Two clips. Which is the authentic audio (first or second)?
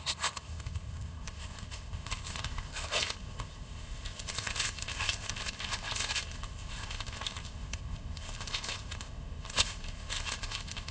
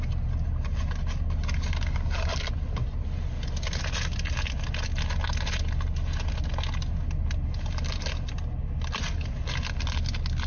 second